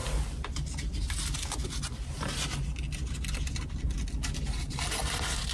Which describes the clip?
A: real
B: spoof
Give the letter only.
A